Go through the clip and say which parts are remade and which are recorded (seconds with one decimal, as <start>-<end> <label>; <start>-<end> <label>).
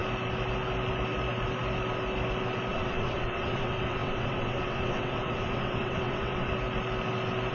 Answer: 0.0-2.7 recorded; 2.7-6.5 remade; 6.5-7.5 recorded